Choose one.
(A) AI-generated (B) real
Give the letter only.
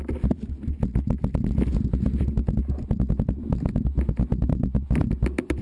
B